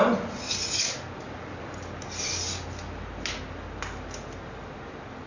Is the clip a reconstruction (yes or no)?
no